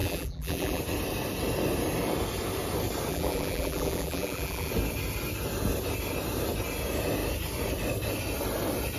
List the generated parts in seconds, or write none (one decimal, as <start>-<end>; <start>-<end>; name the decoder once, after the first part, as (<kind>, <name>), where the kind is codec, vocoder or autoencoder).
0.0-0.8 (vocoder, BigVGAN v2); 3.1-4.7